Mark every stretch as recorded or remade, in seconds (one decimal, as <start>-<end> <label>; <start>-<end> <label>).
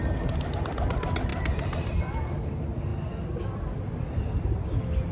0.0-5.1 recorded